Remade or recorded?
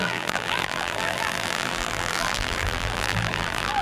remade